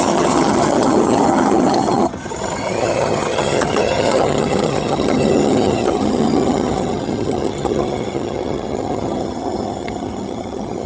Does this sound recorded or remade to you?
remade